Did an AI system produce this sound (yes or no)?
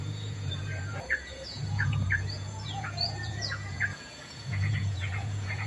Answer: yes